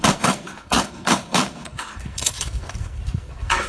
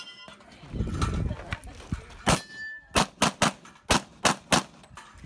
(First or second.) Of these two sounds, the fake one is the first